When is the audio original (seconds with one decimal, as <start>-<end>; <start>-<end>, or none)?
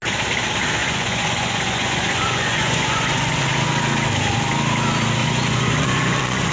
0.0-0.8; 3.4-5.2